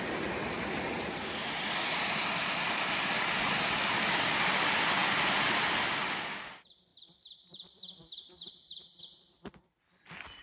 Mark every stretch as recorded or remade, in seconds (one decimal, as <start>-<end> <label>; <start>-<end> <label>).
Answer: 0.0-6.9 recorded; 6.9-9.0 remade; 9.0-10.4 recorded